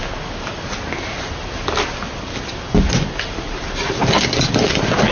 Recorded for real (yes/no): yes